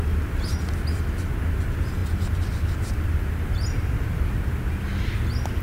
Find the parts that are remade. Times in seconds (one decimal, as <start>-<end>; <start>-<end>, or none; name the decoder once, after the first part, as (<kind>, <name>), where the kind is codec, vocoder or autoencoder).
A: none

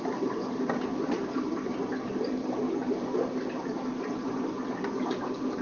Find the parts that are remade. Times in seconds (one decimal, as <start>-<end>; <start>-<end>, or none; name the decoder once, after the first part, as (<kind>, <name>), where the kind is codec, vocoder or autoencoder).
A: 0.9-1.8 (vocoder, BigVGAN v2)

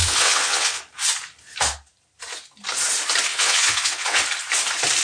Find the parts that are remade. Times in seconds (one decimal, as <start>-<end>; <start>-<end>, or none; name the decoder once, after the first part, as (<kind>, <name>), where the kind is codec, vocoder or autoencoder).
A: 0.0-0.8 (vocoder, WaveNeXt); 3.3-4.2

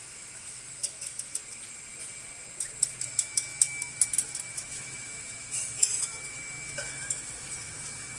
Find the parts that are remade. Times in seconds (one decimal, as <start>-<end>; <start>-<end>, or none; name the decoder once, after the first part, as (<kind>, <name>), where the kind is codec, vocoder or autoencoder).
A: 0.0-1.4 (autoencoder, DAC-VAE); 3.1-8.2

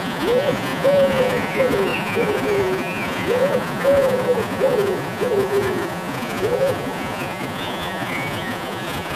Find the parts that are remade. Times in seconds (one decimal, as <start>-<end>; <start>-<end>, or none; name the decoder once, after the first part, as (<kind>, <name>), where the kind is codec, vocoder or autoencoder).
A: 0.0-9.2 (vocoder, Vocos)

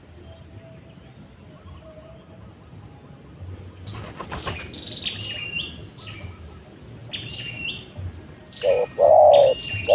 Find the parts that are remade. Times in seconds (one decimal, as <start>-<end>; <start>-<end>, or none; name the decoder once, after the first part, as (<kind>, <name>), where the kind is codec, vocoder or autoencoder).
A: none

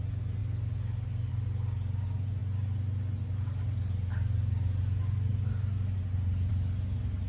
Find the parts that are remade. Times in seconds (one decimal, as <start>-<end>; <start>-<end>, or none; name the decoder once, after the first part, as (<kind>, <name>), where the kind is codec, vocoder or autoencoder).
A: none